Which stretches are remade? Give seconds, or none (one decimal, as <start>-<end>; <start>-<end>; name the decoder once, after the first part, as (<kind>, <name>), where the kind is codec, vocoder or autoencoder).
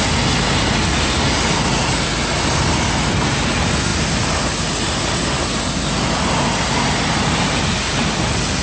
none